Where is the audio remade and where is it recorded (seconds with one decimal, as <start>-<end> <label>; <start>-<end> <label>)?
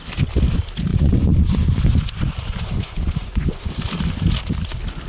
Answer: 0.0-0.9 recorded; 0.9-3.7 remade; 3.7-5.1 recorded